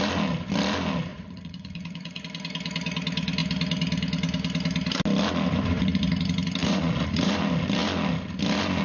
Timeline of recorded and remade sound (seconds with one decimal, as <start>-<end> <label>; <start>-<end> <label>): 0.0-1.1 recorded; 1.1-2.2 remade; 2.2-6.6 recorded; 6.6-7.3 remade; 7.3-8.8 recorded